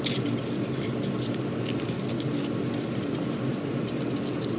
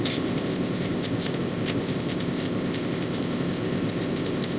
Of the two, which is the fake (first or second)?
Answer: second